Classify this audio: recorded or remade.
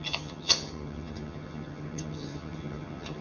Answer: remade